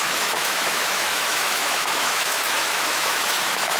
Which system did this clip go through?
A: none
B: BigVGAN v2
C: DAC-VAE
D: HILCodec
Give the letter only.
C